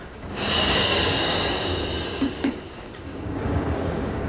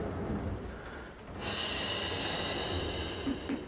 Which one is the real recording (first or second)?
second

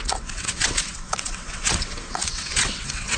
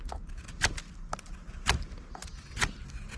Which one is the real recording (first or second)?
second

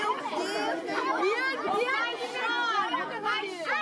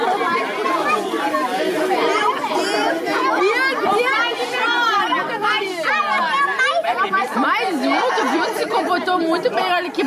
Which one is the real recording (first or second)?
first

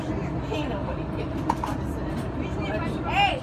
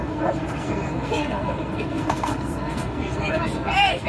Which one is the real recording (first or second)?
first